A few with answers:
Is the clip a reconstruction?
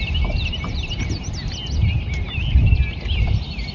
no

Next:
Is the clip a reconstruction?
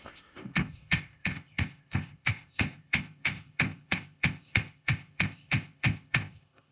yes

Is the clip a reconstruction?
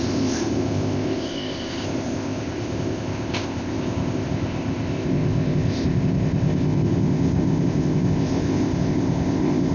yes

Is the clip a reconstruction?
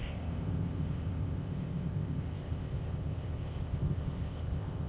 yes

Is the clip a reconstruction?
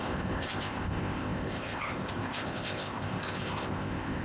yes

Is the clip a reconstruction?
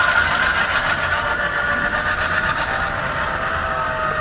no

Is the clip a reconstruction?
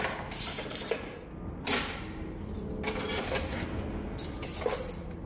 no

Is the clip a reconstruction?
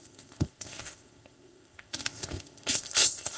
yes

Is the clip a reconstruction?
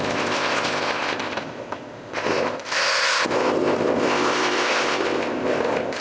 yes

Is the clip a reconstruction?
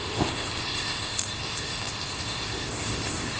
yes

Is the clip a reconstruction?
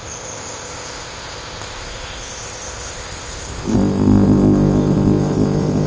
yes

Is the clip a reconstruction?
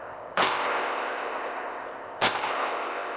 yes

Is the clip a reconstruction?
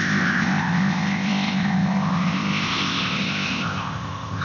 yes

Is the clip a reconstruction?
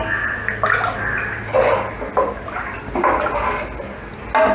no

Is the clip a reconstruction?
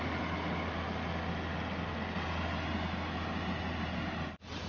no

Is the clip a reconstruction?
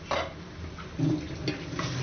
no